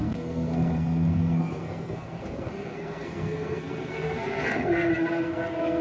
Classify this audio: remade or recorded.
remade